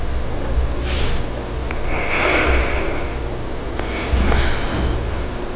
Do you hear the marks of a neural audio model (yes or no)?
no